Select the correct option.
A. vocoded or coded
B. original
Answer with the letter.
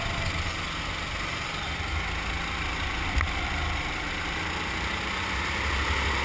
B